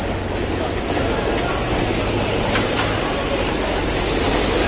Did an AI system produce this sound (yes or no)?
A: no